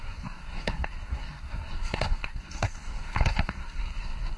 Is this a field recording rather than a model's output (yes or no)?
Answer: no